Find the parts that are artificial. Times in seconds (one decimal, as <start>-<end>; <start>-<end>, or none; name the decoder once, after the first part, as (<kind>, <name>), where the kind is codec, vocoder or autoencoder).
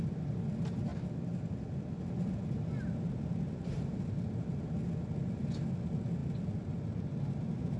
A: none